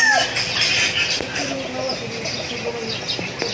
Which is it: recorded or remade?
recorded